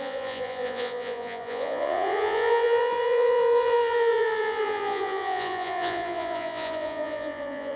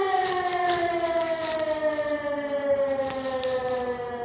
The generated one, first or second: first